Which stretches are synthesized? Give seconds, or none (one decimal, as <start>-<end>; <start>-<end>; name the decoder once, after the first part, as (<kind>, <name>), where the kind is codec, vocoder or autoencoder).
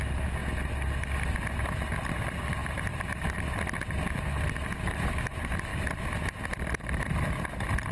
none